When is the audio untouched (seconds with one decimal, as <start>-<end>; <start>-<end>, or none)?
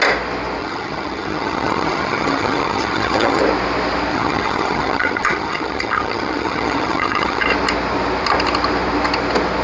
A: 0.0-0.6; 3.4-4.1; 7.4-9.6